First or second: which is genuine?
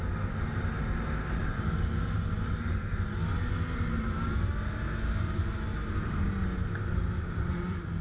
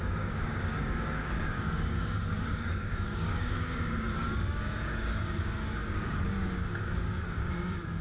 first